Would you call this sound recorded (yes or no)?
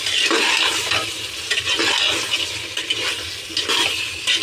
yes